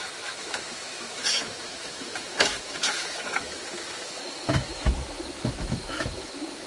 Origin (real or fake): fake